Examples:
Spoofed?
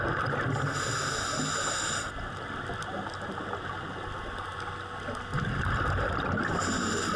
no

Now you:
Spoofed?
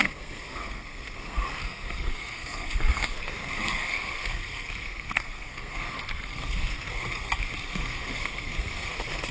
yes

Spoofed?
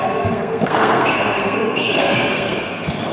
yes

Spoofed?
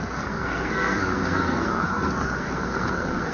yes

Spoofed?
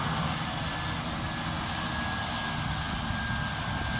no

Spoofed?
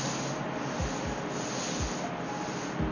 no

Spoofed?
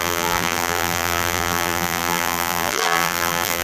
yes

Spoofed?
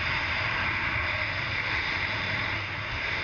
no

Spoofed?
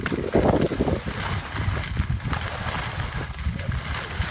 no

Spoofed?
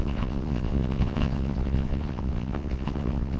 yes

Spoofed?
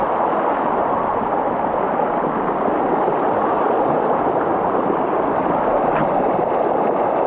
no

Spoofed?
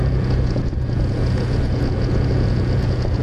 yes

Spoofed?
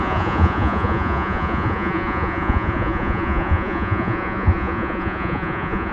yes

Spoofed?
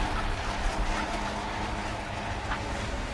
no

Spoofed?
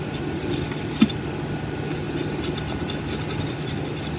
no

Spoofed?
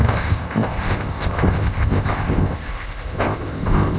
yes